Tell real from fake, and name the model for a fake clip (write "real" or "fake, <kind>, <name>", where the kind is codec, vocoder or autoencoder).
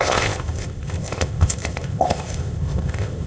fake, codec, ZipCodec